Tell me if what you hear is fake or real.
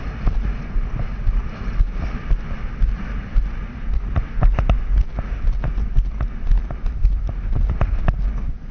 real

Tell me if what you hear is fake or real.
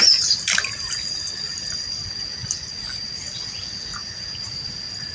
real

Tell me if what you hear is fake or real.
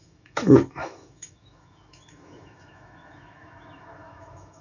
fake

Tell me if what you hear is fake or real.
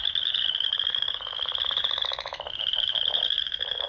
fake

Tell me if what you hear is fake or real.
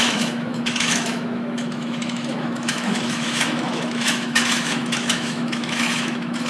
fake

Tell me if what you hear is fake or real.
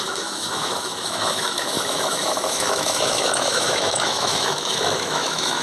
fake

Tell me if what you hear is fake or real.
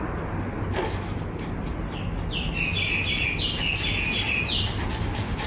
real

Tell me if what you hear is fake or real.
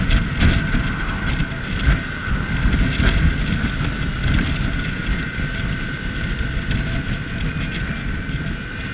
real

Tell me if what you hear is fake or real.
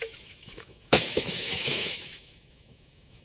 fake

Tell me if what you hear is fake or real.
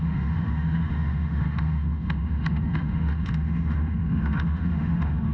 fake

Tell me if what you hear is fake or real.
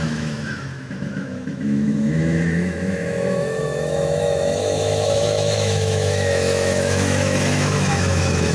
fake